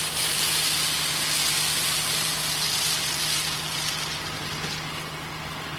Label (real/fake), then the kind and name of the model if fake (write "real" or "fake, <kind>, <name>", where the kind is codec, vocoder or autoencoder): real